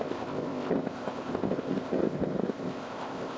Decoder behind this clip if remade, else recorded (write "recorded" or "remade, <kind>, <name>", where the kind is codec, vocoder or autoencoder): remade, codec, ZipCodec